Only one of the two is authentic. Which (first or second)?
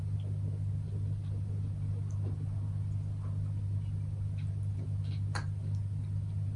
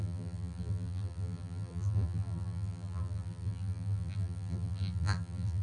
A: first